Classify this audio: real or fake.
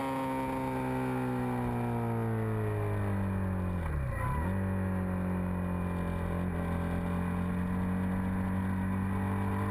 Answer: real